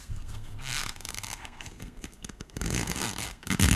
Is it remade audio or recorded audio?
remade